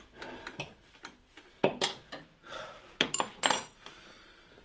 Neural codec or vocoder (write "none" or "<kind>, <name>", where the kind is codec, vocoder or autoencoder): none